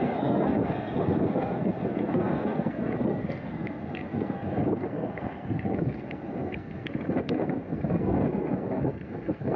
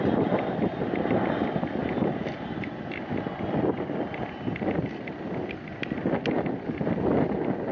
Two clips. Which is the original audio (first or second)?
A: second